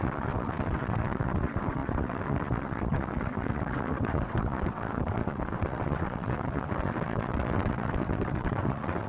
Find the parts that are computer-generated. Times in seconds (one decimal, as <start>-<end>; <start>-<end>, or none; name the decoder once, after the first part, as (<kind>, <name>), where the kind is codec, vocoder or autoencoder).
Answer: 0.0-9.1 (vocoder, WaveNeXt)